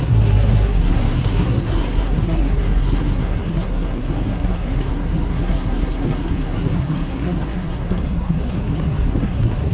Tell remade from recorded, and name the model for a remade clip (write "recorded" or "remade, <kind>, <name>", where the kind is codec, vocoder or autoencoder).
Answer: remade, codec, SNAC